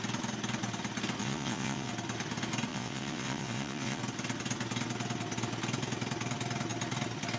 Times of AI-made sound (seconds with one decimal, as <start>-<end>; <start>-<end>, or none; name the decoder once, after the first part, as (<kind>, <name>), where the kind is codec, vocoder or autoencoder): 1.2-1.9 (vocoder, WaveNeXt); 2.7-4.0